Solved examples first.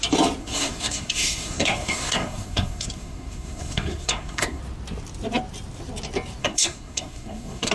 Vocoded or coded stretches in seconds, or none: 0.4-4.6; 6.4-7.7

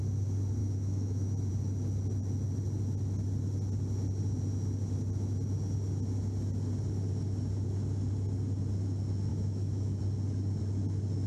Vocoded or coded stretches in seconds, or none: 0.6-1.5; 9.3-10.0

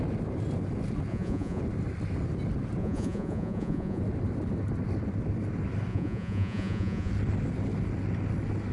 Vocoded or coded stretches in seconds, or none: 1.1-1.6; 2.8-4.0; 5.9-7.1

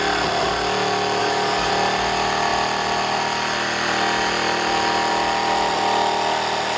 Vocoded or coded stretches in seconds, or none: 1.2-1.7

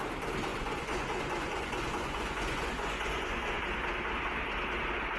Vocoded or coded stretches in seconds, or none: 0.5-3.6

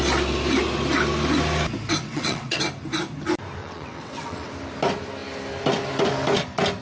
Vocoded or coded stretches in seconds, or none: 2.0-2.6; 3.6-4.5